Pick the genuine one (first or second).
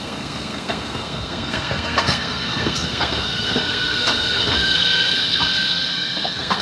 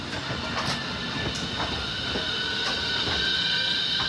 second